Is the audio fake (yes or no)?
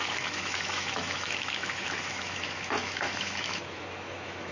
yes